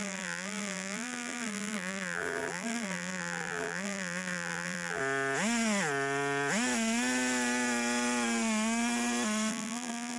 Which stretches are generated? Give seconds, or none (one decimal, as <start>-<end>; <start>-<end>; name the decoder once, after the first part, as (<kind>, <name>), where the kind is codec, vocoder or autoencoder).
0.0-5.0 (vocoder, BigVGAN v2); 9.5-10.2